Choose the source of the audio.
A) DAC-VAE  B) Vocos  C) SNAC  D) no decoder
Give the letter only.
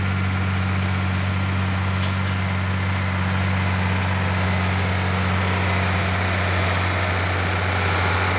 D